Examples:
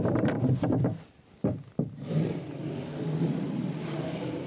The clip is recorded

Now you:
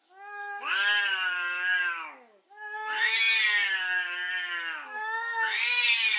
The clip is remade